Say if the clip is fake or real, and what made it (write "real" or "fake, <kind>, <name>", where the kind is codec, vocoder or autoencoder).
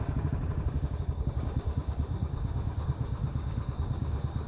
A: fake, codec, DAC